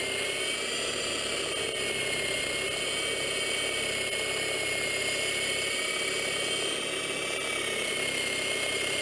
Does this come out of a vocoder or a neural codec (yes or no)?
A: no